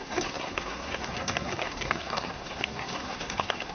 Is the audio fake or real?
fake